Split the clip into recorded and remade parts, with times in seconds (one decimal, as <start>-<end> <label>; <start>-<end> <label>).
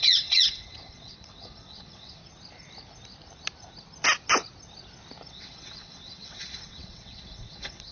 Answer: 0.0-2.2 remade; 2.2-5.3 recorded; 5.3-7.9 remade